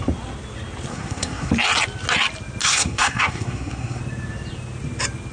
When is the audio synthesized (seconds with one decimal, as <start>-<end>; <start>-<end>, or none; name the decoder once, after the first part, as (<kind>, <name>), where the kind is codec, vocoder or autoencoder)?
0.9-1.5 (codec, SNAC); 2.6-4.0